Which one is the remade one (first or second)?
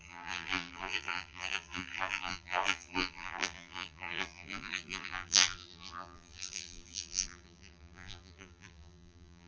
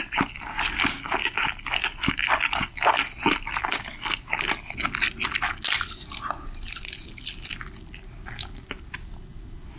first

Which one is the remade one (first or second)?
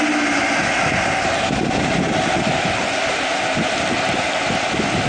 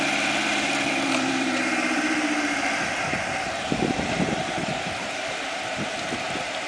second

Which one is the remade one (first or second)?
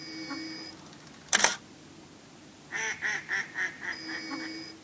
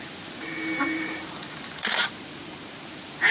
second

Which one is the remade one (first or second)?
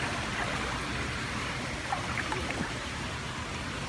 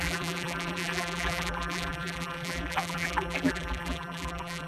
second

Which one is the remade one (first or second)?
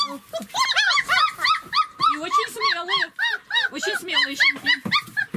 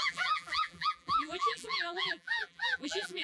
second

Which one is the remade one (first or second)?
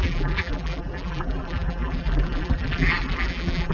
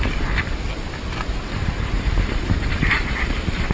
first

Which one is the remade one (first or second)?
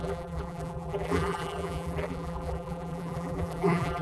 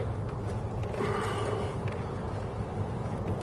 first